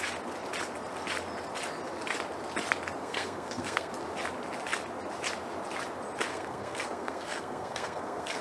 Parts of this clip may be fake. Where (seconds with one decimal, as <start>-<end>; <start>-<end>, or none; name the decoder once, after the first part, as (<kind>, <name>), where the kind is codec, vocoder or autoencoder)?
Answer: 3.0-3.9 (codec, SNAC); 6.3-8.4